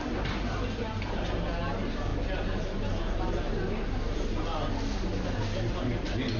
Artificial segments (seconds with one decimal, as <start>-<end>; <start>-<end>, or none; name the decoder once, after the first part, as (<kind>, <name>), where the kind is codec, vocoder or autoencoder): none